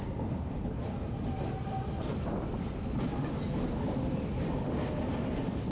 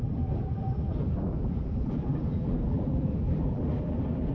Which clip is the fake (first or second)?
second